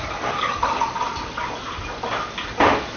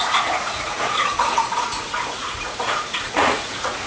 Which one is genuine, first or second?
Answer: first